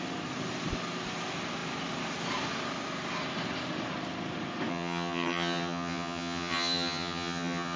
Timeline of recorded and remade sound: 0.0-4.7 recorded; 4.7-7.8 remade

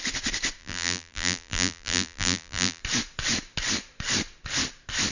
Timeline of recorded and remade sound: 0.0-0.6 recorded; 0.6-2.8 remade; 2.8-5.1 recorded

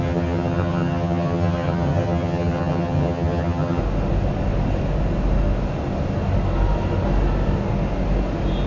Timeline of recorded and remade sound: 0.0-3.8 remade; 3.8-8.7 recorded

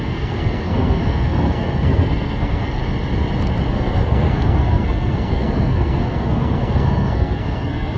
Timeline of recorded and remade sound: 0.0-2.8 remade; 2.8-3.7 recorded; 3.7-8.0 remade

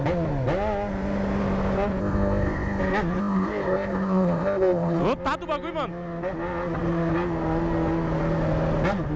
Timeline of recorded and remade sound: 0.0-2.0 recorded; 2.0-2.8 remade; 2.8-3.2 recorded; 3.2-5.0 remade; 5.0-9.2 recorded

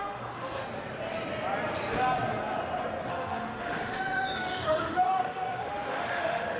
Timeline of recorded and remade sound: 0.0-0.6 remade; 0.6-3.1 recorded; 3.1-6.6 remade

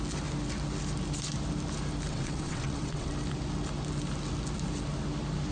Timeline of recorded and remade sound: 0.0-2.1 recorded; 2.1-3.1 remade; 3.1-5.5 recorded

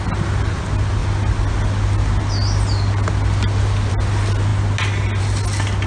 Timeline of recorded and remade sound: 0.0-5.9 recorded